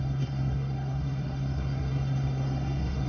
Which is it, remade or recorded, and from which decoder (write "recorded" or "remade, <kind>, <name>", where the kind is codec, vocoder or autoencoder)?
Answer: remade, codec, SNAC